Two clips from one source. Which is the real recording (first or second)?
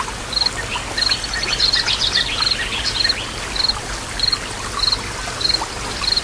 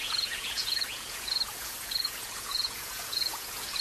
first